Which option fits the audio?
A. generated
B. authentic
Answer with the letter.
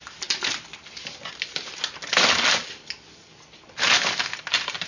B